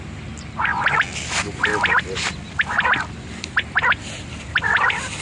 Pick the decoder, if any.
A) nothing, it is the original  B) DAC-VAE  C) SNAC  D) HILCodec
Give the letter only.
A